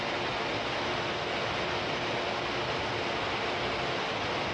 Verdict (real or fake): real